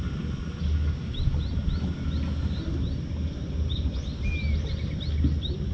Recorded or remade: recorded